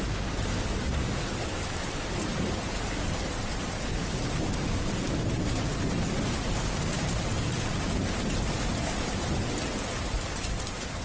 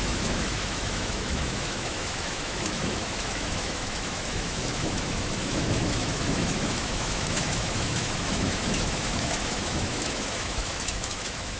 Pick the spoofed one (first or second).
second